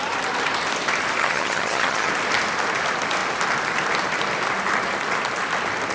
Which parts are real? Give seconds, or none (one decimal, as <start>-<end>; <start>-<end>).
0.0-1.2; 2.1-5.9